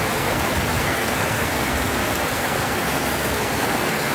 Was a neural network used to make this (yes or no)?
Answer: yes